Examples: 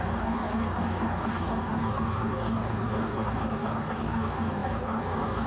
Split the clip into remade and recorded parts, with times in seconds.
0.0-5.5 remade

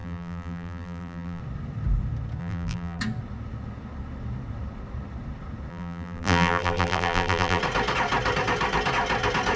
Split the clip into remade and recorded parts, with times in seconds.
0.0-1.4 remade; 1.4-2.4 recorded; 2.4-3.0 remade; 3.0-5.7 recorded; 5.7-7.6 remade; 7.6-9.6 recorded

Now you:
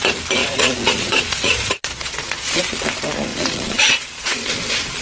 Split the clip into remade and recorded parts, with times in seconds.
0.0-0.4 recorded; 0.4-2.6 remade; 2.6-3.3 recorded; 3.3-4.5 remade; 4.5-5.0 recorded

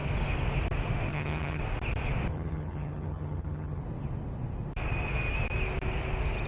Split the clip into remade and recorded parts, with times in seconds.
0.0-1.1 recorded; 1.1-1.6 remade; 1.6-2.3 recorded; 2.3-3.8 remade; 3.8-6.5 recorded

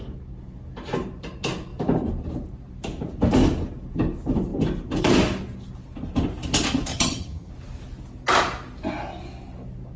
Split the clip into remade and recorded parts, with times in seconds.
0.0-6.9 recorded; 6.9-7.5 remade; 7.5-10.0 recorded